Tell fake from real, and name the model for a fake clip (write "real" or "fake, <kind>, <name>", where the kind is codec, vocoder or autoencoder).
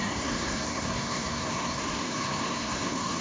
fake, codec, SNAC